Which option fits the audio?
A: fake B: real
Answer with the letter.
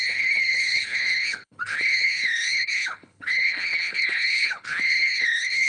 A